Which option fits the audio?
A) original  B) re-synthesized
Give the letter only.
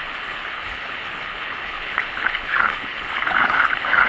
B